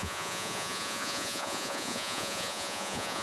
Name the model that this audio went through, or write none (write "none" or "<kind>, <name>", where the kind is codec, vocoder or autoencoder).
vocoder, Vocos